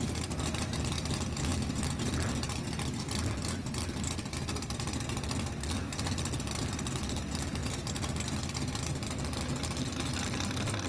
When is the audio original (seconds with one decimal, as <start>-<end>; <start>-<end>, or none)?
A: 0.0-10.9